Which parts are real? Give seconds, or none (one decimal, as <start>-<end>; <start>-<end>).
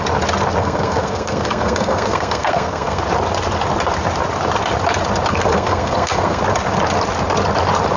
0.0-0.6; 3.0-5.3; 6.4-8.0